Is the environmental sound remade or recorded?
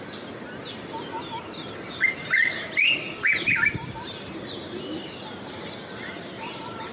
recorded